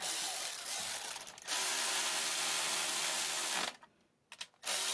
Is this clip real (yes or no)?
yes